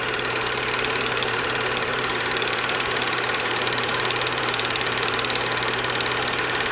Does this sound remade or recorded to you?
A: remade